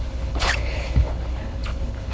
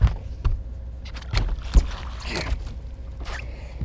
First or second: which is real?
second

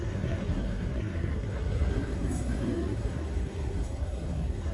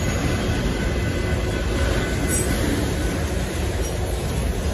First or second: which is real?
second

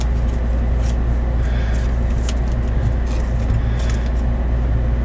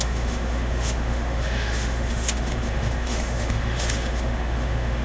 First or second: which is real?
first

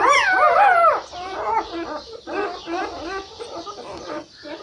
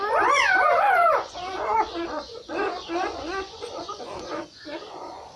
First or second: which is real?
first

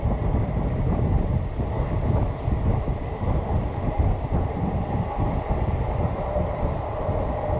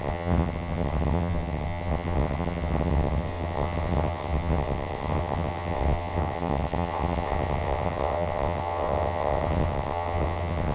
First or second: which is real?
first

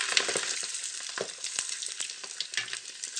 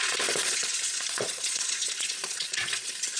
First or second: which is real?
first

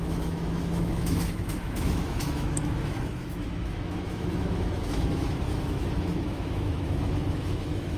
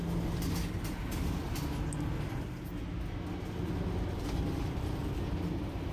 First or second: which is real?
second